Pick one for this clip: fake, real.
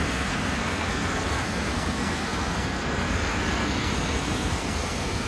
fake